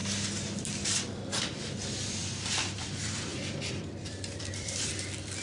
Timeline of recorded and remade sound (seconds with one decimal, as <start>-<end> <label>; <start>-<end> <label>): 0.0-0.6 recorded; 0.6-5.4 remade